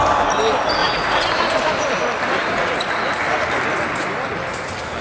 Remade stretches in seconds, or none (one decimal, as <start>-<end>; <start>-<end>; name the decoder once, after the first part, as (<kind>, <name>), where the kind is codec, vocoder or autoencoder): 0.8-1.3 (vocoder, Vocos); 2.4-3.0